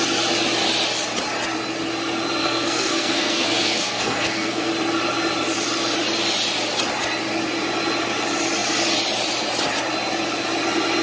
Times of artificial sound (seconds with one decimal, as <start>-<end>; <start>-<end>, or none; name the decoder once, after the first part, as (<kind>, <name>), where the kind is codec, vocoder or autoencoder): 2.4-4.7 (codec, SNAC)